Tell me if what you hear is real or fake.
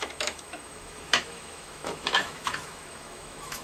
fake